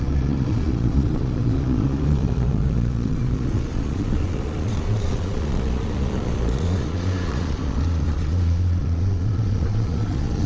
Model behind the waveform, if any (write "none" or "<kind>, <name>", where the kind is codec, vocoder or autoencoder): vocoder, Vocos